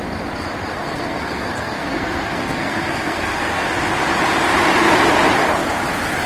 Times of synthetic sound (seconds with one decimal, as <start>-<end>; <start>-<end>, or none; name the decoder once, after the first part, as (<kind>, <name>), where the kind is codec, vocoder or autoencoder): 0.7-3.7 (codec, SNAC)